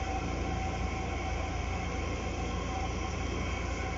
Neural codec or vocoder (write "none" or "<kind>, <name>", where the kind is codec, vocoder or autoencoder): none